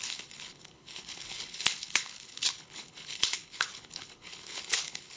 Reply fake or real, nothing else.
fake